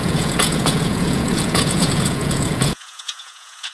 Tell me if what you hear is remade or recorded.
remade